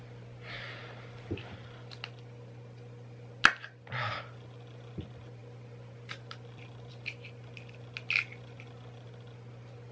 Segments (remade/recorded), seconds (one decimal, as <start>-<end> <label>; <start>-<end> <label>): 0.0-9.9 recorded